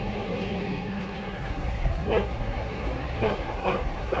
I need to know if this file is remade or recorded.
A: remade